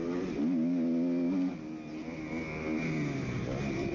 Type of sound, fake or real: real